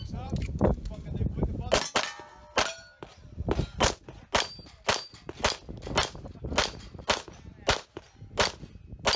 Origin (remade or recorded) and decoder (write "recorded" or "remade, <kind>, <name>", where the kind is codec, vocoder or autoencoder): recorded